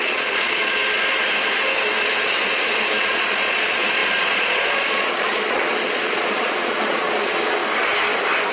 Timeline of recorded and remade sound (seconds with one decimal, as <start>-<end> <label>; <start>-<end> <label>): 0.0-0.8 remade; 0.8-3.0 recorded; 3.0-7.6 remade; 7.6-8.5 recorded